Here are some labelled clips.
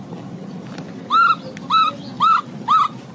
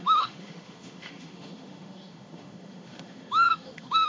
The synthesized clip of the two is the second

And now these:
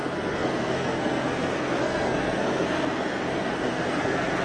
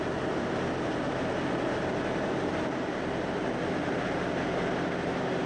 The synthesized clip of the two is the first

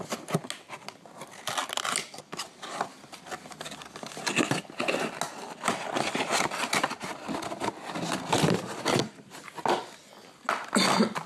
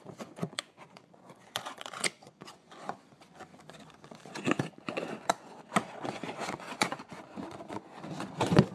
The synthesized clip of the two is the second